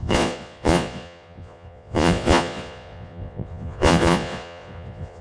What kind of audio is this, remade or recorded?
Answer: remade